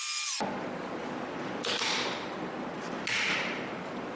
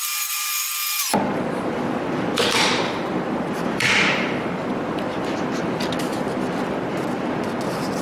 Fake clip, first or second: second